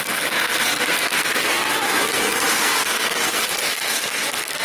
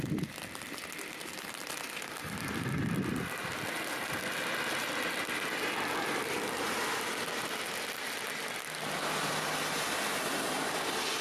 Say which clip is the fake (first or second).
first